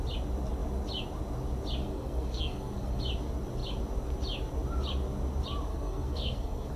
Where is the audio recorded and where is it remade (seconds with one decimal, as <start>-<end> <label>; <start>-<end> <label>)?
0.0-1.8 recorded; 1.8-3.0 remade; 3.0-5.7 recorded; 5.7-6.8 remade